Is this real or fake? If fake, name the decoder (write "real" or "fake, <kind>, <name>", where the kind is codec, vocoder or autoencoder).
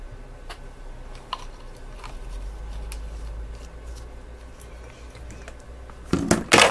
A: real